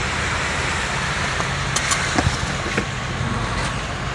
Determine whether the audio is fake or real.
real